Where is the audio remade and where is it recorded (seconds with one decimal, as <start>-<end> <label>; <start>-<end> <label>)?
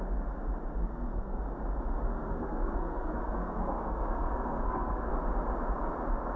0.0-0.8 recorded; 0.8-1.4 remade; 1.4-2.0 recorded; 2.0-5.1 remade; 5.1-6.4 recorded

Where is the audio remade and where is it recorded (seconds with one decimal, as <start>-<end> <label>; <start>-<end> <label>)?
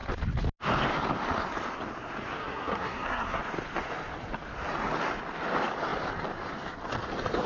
0.0-2.4 recorded; 2.4-3.4 remade; 3.4-7.5 recorded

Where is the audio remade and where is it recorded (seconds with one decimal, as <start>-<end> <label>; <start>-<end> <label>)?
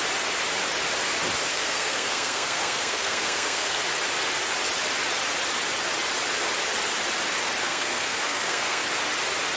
0.0-1.5 recorded; 1.5-3.8 remade; 3.8-7.6 recorded; 7.6-8.8 remade; 8.8-9.6 recorded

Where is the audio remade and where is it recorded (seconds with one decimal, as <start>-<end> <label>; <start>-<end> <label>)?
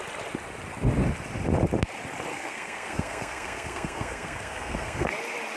0.0-2.3 recorded; 2.3-5.1 remade; 5.1-5.6 recorded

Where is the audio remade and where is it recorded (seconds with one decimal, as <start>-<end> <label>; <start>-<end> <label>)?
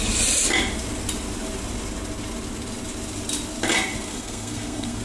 0.0-4.1 recorded; 4.1-5.0 remade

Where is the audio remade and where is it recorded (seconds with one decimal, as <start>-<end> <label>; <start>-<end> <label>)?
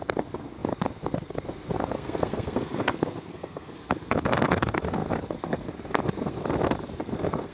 0.0-6.4 remade; 6.4-7.0 recorded; 7.0-7.5 remade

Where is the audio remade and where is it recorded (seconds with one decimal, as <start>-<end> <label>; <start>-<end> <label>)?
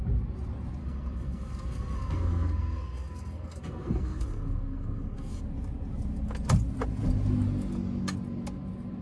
0.0-0.8 recorded; 0.8-5.4 remade; 5.4-9.0 recorded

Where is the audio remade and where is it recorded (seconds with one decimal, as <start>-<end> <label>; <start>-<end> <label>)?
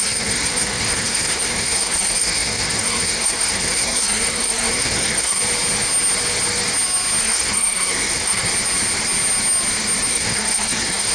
0.0-5.4 remade; 5.4-7.2 recorded; 7.2-8.5 remade; 8.5-10.1 recorded; 10.1-11.1 remade